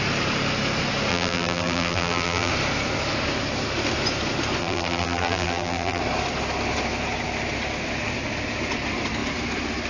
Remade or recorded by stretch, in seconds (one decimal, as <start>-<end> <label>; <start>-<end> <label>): 0.0-1.1 recorded; 1.1-2.5 remade; 2.5-4.6 recorded; 4.6-6.0 remade; 6.0-9.9 recorded